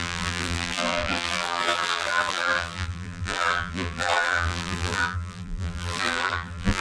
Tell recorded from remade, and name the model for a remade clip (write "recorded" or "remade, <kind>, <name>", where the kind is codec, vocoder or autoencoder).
remade, vocoder, BigVGAN v2